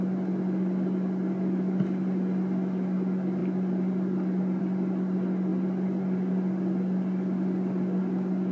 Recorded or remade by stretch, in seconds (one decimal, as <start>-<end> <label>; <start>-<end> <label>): 0.0-8.5 recorded